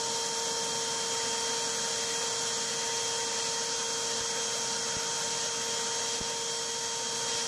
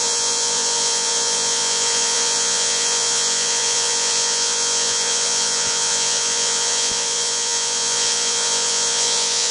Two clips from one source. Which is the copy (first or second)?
second